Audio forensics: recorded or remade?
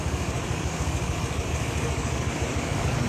remade